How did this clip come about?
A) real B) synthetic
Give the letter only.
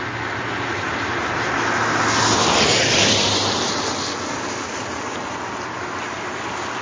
A